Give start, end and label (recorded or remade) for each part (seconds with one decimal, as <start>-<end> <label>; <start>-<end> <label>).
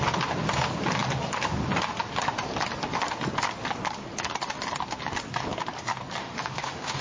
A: 0.0-6.2 recorded; 6.2-7.0 remade